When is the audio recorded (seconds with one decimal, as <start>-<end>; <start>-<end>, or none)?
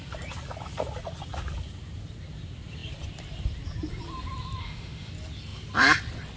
0.0-4.6; 5.1-6.4